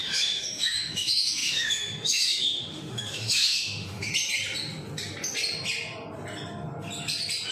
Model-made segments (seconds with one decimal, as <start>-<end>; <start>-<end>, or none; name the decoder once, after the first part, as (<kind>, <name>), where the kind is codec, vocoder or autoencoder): 0.0-4.1 (autoencoder, DAC-VAE)